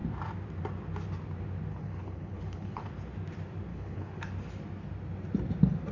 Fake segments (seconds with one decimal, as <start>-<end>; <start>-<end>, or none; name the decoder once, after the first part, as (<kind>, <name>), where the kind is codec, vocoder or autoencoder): 1.7-2.9 (codec, HILCodec); 3.7-4.3